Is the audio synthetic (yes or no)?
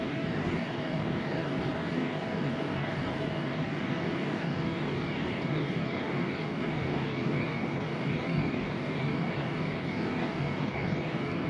yes